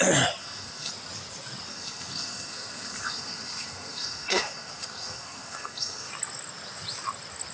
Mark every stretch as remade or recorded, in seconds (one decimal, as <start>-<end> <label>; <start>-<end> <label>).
0.0-0.4 recorded; 0.4-0.9 remade; 0.9-1.7 recorded; 1.7-6.1 remade; 6.1-7.5 recorded